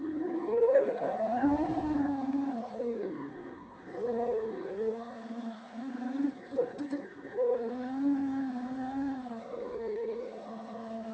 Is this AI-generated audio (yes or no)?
yes